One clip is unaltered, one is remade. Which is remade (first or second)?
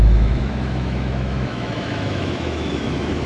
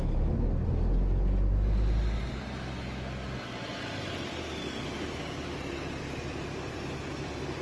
first